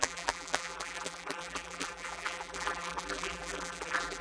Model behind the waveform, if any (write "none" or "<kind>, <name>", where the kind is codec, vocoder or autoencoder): vocoder, BigVGAN v2